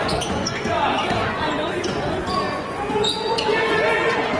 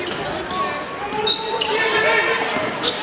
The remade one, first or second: first